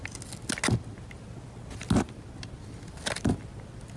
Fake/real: real